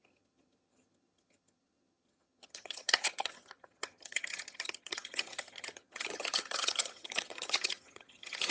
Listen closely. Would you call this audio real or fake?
fake